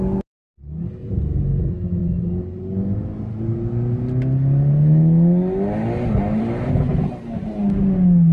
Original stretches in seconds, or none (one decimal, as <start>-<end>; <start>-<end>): 0.0-8.3